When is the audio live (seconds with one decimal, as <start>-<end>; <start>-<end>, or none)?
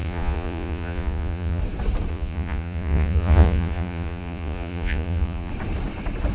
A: 1.6-2.1; 5.5-6.3